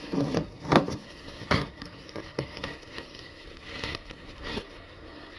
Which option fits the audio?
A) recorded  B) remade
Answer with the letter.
B